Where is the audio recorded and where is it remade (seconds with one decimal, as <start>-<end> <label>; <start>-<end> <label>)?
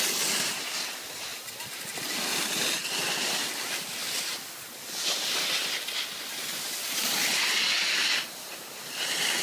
0.0-2.8 recorded; 2.8-3.4 remade; 3.4-9.4 recorded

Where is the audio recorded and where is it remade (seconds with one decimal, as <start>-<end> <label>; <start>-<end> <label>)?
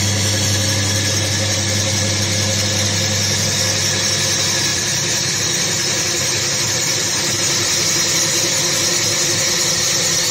0.0-4.7 recorded; 4.7-7.4 remade; 7.4-10.3 recorded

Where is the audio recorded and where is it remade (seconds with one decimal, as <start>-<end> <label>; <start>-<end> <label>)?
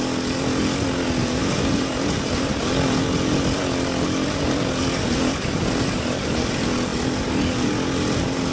0.0-1.2 recorded; 1.2-2.6 remade; 2.6-8.5 recorded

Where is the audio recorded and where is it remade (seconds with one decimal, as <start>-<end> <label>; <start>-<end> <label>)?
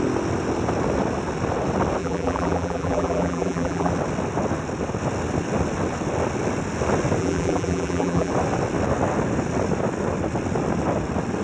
0.0-2.0 recorded; 2.0-3.9 remade; 3.9-7.2 recorded; 7.2-8.3 remade; 8.3-11.4 recorded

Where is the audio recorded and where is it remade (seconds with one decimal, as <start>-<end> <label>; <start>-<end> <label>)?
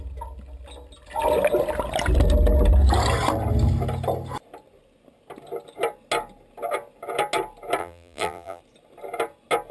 0.0-7.8 recorded; 7.8-8.6 remade; 8.6-9.7 recorded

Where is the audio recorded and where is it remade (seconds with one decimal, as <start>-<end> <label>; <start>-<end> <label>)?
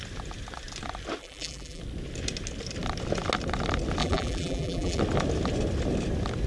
0.0-1.2 recorded; 1.2-1.8 remade; 1.8-4.0 recorded; 4.0-5.0 remade; 5.0-6.5 recorded